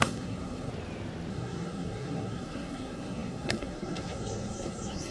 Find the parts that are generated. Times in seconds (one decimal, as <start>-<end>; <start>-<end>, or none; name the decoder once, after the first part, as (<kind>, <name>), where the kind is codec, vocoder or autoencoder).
0.0-0.7 (codec, SNAC); 1.3-5.1